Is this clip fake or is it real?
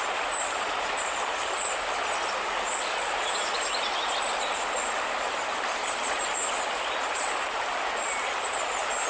real